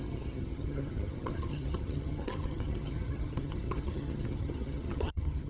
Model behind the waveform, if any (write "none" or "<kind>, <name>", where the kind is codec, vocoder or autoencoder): vocoder, HiFi-GAN